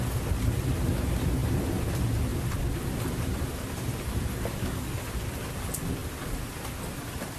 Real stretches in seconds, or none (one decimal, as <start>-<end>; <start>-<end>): 0.0-2.3; 3.8-7.4

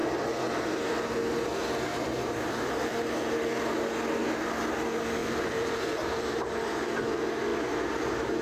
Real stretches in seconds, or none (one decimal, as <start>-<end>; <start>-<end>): 0.0-1.9; 2.7-5.2; 6.9-8.4

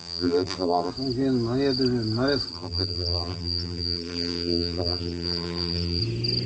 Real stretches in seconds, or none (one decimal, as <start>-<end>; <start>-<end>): 0.9-2.5; 6.0-6.5

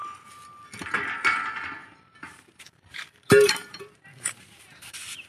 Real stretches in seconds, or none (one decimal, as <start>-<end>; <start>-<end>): 0.0-1.8

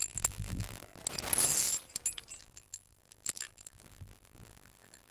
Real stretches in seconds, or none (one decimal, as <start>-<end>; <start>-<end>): 1.0-2.4

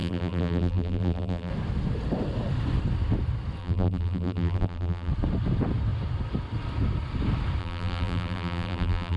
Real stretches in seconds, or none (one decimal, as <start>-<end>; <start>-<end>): 1.5-3.6; 5.1-7.6

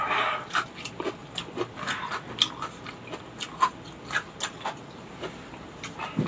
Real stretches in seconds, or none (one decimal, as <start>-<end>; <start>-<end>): 0.0-1.2; 2.9-6.3

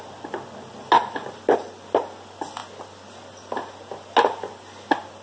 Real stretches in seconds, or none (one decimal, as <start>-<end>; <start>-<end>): 0.0-5.2